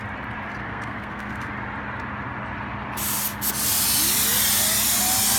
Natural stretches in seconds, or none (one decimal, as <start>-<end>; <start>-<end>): 0.0-0.6; 1.5-5.4